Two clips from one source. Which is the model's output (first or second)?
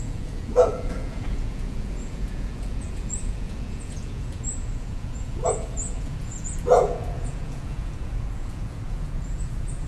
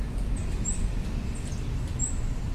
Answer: first